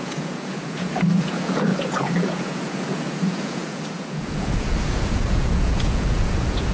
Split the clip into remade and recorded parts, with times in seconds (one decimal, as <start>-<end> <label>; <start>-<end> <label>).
0.0-6.7 remade

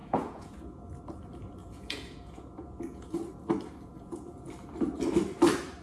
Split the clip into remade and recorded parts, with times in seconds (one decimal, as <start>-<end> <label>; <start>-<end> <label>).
0.0-0.9 remade; 0.9-1.6 recorded; 1.6-3.1 remade; 3.1-3.9 recorded; 3.9-4.5 remade; 4.5-5.8 recorded

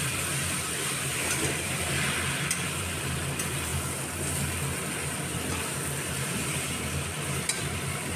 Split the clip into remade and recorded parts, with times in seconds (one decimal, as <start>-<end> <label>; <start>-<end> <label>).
0.0-3.7 remade; 3.7-5.1 recorded; 5.1-8.2 remade

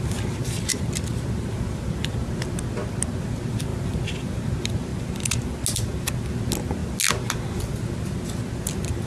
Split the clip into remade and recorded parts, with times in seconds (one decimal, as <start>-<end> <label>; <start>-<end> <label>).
0.0-9.1 recorded